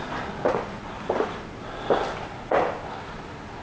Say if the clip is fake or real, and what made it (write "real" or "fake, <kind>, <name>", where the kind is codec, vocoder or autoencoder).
real